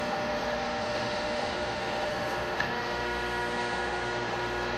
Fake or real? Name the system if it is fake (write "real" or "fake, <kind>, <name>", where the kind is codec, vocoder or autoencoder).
fake, autoencoder, DAC-VAE